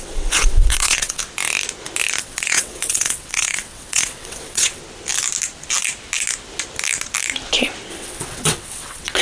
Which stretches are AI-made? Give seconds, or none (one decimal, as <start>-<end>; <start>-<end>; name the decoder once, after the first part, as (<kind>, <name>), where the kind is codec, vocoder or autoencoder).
0.0-1.2 (vocoder, WaveNeXt); 2.2-4.8; 7.9-9.2

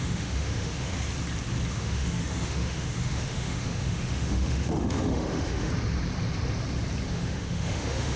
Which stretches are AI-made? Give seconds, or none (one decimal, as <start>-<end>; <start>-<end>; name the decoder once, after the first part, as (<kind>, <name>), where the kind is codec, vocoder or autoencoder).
0.0-0.9 (autoencoder, DAC-VAE); 1.7-5.7; 7.1-8.2

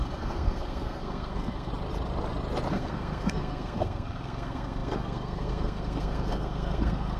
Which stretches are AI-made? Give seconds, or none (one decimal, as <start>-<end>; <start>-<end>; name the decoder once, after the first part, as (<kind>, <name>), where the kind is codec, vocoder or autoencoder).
0.0-1.7 (codec, SNAC); 2.7-7.2

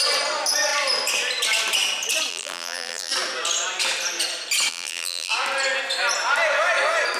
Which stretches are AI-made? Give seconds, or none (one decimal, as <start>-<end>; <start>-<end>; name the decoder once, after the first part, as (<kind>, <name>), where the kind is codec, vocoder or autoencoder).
2.3-3.1 (vocoder, BigVGAN v2); 4.7-5.3

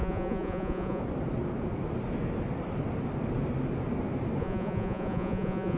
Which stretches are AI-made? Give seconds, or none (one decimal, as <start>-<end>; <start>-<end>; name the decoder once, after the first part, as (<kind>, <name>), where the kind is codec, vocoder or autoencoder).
0.0-1.0 (vocoder, Vocos); 4.4-5.8

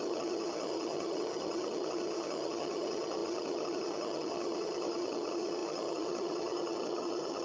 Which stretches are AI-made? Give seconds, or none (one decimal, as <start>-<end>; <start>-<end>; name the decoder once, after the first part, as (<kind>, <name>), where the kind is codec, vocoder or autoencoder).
0.0-7.4 (vocoder, HiFi-GAN)

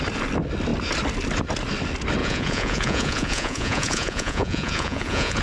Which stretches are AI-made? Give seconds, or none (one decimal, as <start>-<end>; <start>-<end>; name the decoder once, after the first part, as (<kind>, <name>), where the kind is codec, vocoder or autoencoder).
2.2-5.4 (vocoder, Vocos)

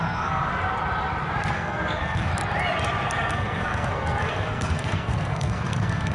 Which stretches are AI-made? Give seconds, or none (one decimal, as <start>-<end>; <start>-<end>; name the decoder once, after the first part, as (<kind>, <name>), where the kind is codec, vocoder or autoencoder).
0.0-0.5 (codec, SNAC); 1.5-2.3; 3.3-6.1